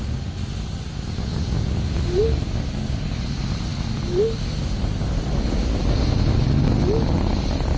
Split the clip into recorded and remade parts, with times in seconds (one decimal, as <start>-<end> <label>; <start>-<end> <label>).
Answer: 0.0-7.8 recorded